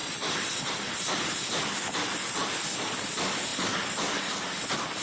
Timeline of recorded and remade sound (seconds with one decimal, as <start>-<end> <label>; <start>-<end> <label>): 0.0-0.9 remade; 0.9-5.0 recorded